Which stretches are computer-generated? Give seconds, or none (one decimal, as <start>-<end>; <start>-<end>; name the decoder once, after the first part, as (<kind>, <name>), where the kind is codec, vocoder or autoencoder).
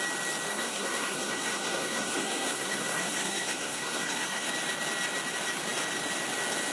0.5-4.5 (codec, SNAC)